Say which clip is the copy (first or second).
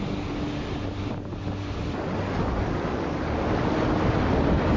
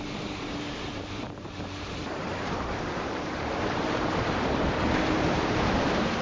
second